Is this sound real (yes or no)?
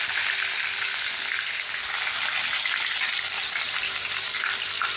yes